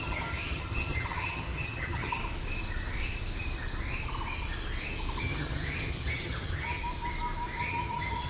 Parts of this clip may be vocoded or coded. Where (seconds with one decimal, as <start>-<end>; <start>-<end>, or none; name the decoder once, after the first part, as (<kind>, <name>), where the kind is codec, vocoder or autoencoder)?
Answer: 0.0-2.2 (vocoder, HiFi-GAN); 5.2-6.8; 7.6-8.3